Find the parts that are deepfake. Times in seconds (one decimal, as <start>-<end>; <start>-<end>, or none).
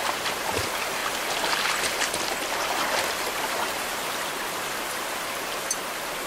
0.0-1.0; 3.3-6.3